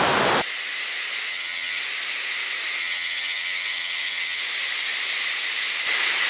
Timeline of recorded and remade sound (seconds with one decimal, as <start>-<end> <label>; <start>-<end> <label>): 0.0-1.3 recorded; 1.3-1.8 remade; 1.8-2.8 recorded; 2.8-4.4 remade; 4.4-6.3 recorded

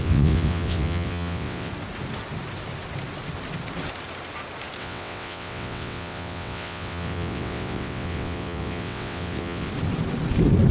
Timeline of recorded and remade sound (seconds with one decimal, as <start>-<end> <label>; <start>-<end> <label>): 0.0-1.7 remade; 1.7-4.8 recorded; 4.8-9.7 remade; 9.7-10.7 recorded

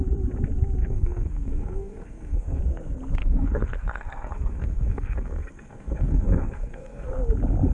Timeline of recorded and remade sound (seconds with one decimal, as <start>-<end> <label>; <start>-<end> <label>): 0.0-0.8 recorded; 0.8-2.6 remade; 2.6-3.2 recorded; 3.2-7.1 remade; 7.1-7.7 recorded

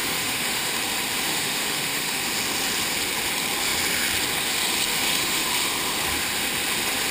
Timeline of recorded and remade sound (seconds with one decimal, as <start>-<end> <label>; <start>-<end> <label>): 0.0-0.8 remade; 0.8-1.3 recorded; 1.3-2.2 remade; 2.2-4.9 recorded; 4.9-5.5 remade; 5.5-7.1 recorded

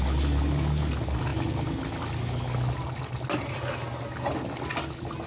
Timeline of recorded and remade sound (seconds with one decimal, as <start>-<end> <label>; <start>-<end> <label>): 0.0-5.3 recorded

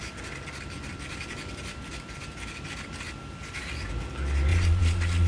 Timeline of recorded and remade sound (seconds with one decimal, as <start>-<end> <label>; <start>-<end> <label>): 0.0-4.5 recorded; 4.5-5.3 remade

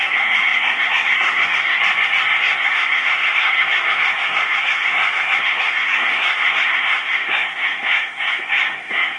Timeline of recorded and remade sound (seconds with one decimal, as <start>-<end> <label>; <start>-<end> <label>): 0.0-1.8 remade; 1.8-2.4 recorded; 2.4-9.2 remade

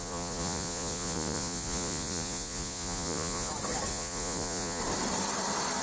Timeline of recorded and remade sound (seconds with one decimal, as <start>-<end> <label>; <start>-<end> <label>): 0.0-3.5 remade; 3.5-3.9 recorded; 3.9-4.8 remade; 4.8-5.8 recorded